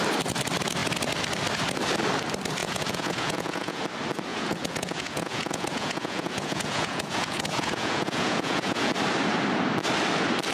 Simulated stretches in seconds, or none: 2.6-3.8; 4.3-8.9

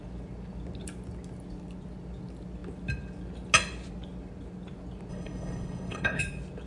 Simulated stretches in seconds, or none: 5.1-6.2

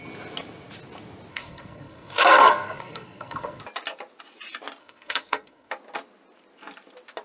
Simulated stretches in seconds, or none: 1.3-3.6; 4.8-5.7

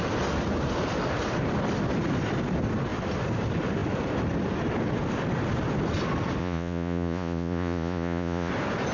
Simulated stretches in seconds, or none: 6.4-8.5

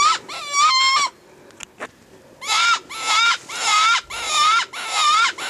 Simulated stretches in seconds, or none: none

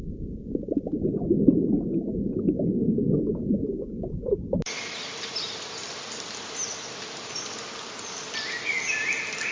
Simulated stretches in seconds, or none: 2.7-3.2

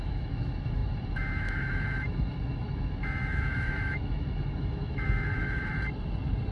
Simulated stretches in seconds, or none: 0.0-5.7

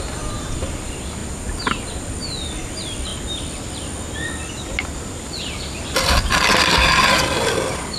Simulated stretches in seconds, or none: none